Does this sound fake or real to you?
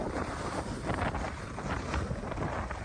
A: fake